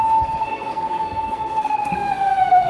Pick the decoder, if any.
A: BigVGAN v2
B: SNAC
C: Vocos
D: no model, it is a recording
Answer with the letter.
B